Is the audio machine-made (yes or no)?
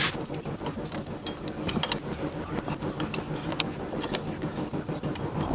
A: no